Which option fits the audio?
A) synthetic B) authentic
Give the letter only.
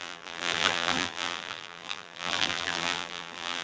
A